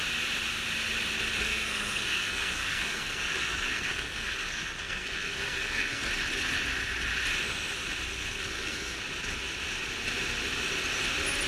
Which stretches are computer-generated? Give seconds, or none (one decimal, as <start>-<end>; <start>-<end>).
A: 1.4-6.1; 8.2-9.0